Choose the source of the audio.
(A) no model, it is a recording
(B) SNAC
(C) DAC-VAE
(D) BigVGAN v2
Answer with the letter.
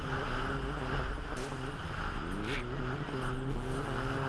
A